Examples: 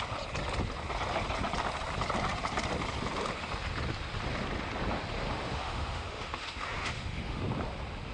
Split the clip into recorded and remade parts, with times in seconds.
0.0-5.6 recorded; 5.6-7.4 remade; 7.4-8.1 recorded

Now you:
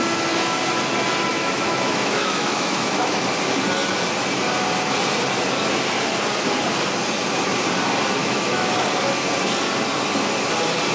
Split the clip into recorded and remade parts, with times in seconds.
0.0-1.3 recorded; 1.3-3.2 remade; 3.2-8.2 recorded; 8.2-8.7 remade; 8.7-10.9 recorded

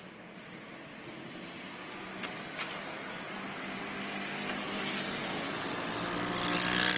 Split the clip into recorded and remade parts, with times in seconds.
0.0-7.0 recorded

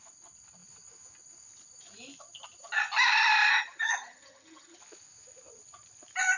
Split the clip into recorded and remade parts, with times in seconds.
0.0-3.5 recorded; 3.5-4.8 remade; 4.8-6.4 recorded